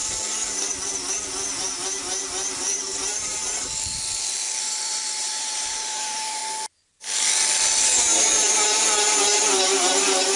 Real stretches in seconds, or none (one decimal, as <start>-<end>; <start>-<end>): 0.0-1.6; 3.4-4.6; 6.4-8.5